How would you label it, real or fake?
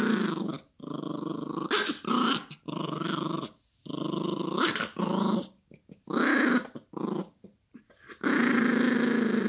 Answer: real